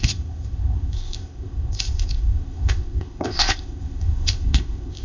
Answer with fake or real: fake